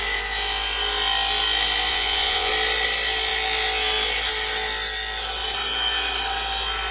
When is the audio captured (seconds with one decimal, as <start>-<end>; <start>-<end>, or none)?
0.0-1.9; 2.5-6.9